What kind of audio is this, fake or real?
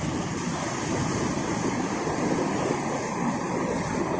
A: real